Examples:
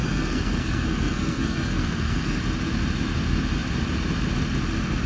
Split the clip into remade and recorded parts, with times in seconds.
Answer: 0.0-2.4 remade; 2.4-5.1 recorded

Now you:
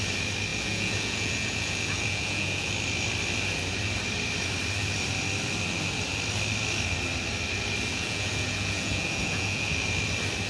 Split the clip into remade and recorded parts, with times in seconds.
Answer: 0.0-0.5 recorded; 0.5-2.7 remade; 2.7-7.9 recorded; 7.9-9.7 remade; 9.7-10.5 recorded

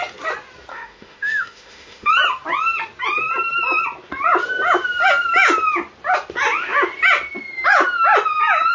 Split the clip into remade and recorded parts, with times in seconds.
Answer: 0.0-0.7 recorded; 0.7-2.1 remade; 2.1-8.7 recorded

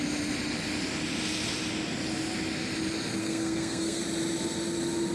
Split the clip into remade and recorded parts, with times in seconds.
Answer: 0.0-3.2 recorded; 3.2-4.0 remade; 4.0-5.1 recorded

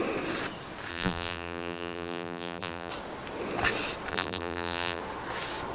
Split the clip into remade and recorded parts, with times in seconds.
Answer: 0.0-0.9 recorded; 0.9-2.9 remade; 2.9-4.1 recorded; 4.1-5.0 remade; 5.0-5.7 recorded